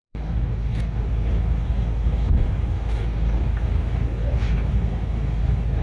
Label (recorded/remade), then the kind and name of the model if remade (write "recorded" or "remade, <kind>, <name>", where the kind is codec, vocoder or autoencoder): remade, codec, DAC